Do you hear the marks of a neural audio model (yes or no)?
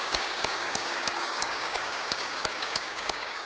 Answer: yes